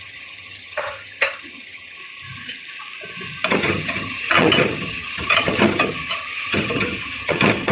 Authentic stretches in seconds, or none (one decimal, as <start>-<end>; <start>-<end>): 2.0-3.5